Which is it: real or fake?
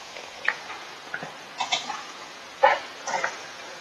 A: fake